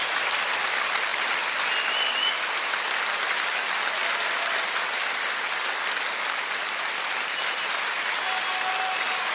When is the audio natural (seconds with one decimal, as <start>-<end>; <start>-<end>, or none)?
0.0-9.3